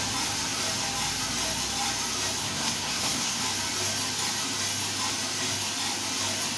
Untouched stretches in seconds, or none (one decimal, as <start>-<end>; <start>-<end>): 0.0-2.4; 3.4-6.6